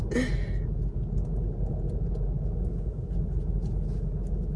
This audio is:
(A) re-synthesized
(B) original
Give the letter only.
B